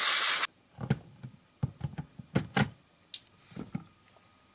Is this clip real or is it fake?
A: real